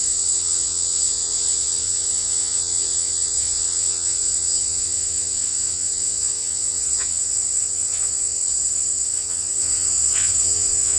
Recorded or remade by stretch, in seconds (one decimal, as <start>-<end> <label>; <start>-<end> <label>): 0.0-11.0 remade